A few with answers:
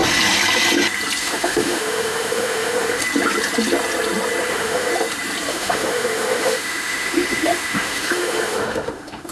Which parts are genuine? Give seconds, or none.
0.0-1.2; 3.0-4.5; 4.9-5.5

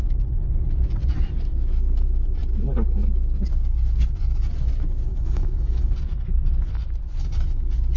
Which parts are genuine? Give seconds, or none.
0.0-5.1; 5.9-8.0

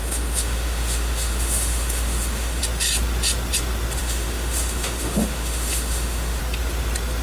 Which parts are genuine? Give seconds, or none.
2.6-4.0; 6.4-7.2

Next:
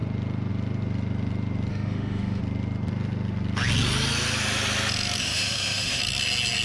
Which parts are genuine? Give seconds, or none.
0.0-1.7; 2.4-5.2; 6.0-6.6

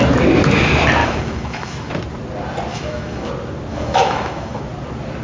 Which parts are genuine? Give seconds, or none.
0.0-1.0; 1.9-2.7; 3.3-3.7; 4.6-5.2

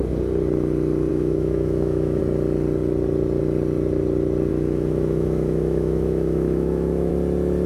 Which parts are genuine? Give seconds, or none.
0.0-1.1; 2.2-4.5; 7.1-7.7

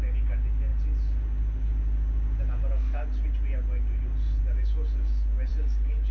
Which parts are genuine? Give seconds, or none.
0.0-6.1

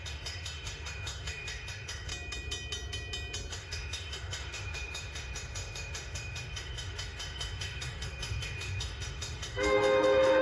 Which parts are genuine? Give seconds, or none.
2.1-3.5